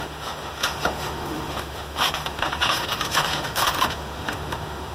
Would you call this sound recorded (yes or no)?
no